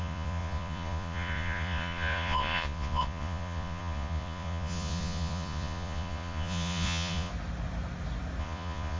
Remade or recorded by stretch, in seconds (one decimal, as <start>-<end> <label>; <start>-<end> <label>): 0.0-7.3 remade; 7.3-8.4 recorded; 8.4-9.0 remade